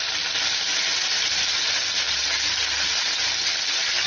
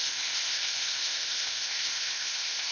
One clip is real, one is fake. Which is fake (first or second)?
second